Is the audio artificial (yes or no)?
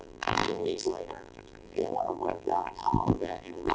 yes